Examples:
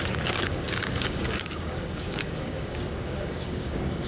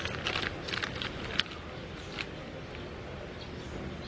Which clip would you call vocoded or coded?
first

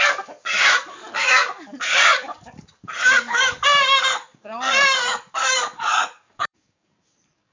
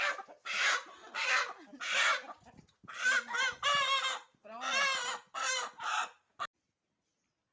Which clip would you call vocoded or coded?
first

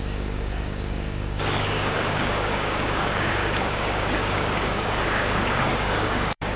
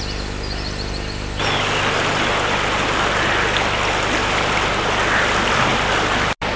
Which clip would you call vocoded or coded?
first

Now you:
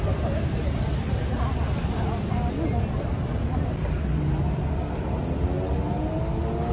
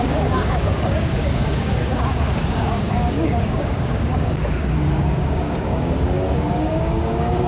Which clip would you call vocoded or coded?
second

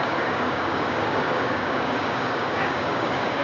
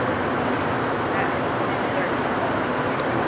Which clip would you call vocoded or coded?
first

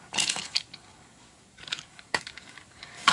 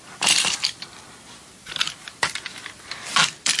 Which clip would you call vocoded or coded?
first